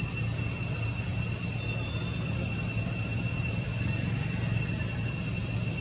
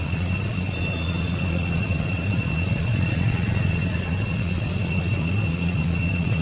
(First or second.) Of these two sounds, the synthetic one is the second